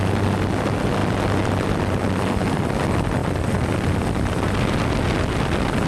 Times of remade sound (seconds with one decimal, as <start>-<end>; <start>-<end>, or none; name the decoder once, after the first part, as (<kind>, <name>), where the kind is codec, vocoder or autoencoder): none

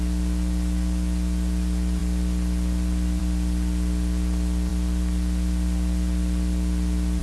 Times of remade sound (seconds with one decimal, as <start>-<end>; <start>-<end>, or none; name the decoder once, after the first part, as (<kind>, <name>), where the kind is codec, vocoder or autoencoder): none

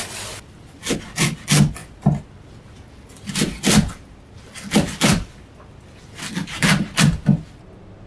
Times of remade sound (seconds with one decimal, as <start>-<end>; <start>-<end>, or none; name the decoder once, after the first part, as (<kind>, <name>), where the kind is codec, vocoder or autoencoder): none

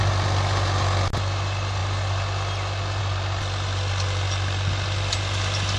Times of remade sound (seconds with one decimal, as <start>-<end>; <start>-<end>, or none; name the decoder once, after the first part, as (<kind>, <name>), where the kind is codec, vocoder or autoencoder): none